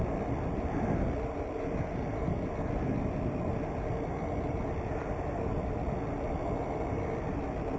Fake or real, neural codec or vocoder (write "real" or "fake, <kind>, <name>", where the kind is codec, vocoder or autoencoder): real